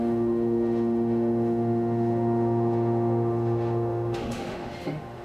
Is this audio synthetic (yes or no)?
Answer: yes